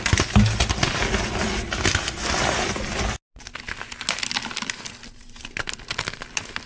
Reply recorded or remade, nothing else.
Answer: recorded